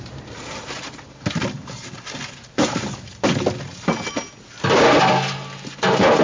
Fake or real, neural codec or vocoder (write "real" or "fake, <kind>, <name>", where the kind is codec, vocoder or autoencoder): real